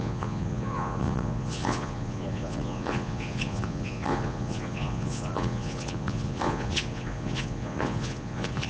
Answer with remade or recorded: remade